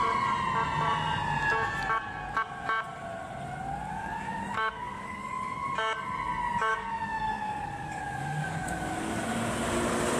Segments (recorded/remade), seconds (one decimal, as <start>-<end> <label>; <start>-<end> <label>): 0.0-3.9 recorded; 3.9-5.3 remade; 5.3-6.7 recorded; 6.7-9.2 remade; 9.2-10.2 recorded